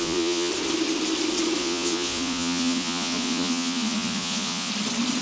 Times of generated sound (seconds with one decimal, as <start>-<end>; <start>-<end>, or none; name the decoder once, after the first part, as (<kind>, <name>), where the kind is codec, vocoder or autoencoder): 0.0-0.5 (vocoder, Vocos); 1.6-4.7